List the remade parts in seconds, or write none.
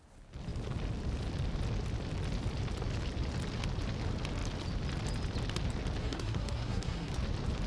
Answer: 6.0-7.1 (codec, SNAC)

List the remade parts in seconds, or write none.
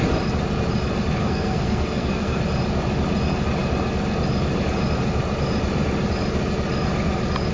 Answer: 1.2-2.4 (codec, SNAC)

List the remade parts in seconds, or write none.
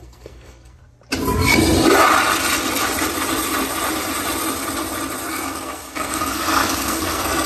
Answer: 0.0-0.8 (codec, SNAC); 5.3-7.5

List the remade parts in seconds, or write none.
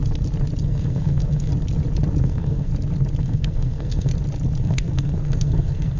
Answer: 0.6-1.5 (codec, SNAC); 2.2-2.7; 3.2-4.1; 4.6-6.0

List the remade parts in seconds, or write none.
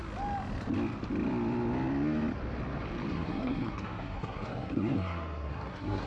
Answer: 3.1-6.1 (codec, SNAC)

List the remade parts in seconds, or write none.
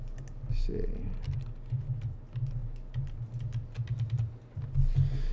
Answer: none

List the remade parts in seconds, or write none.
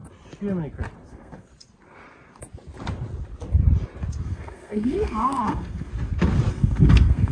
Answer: 1.1-1.5 (codec, SNAC); 4.2-5.9; 6.5-7.3